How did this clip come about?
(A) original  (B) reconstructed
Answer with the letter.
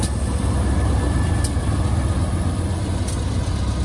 A